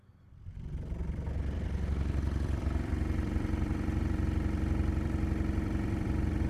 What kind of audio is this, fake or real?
fake